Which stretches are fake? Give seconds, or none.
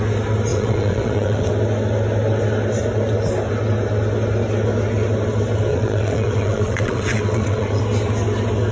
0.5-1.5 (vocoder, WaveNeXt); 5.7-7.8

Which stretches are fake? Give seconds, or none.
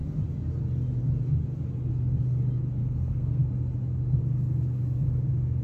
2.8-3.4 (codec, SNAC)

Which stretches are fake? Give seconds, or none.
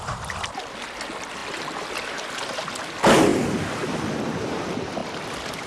none